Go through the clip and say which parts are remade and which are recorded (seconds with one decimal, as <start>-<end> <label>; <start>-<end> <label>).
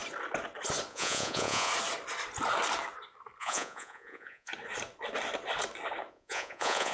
0.0-0.9 recorded; 0.9-1.7 remade; 1.7-3.4 recorded; 3.4-4.5 remade; 4.5-6.1 recorded; 6.1-6.9 remade